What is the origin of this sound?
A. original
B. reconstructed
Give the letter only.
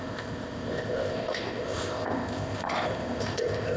B